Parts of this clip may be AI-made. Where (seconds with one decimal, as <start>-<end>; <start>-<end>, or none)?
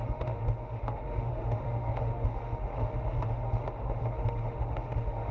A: 0.0-5.3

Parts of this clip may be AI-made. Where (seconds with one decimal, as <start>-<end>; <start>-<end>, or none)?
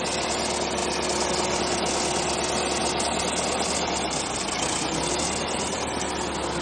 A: none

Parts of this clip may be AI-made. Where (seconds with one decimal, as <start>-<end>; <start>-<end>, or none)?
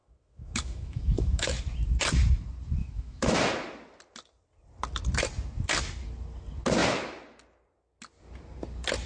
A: 0.0-1.6; 2.8-3.4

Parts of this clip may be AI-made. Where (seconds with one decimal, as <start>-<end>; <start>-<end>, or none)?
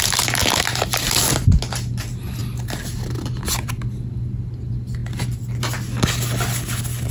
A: none